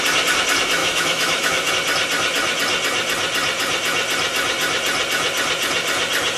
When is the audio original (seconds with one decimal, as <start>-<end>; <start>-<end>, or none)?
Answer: 0.0-0.8; 1.7-6.4